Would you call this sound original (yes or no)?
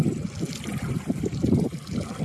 yes